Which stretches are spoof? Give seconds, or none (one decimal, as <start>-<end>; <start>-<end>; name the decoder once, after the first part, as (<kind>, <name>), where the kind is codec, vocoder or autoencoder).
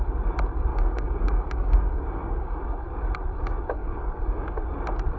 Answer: 0.7-2.6 (codec, DAC); 3.8-4.6